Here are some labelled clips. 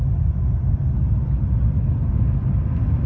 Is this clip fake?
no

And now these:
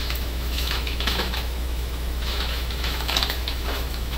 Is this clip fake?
yes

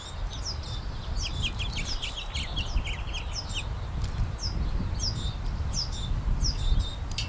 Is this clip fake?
no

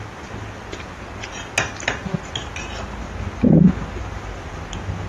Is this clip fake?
no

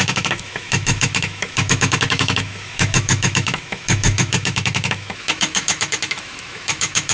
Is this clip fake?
yes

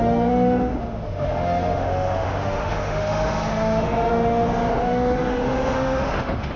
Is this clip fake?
yes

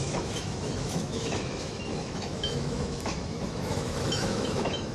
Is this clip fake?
yes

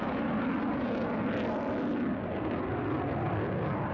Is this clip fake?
no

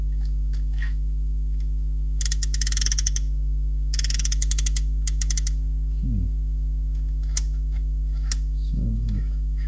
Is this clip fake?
yes